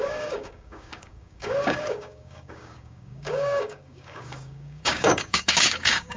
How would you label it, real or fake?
fake